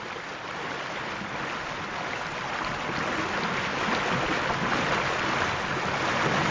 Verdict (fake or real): real